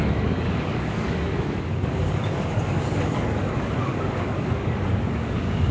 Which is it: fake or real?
fake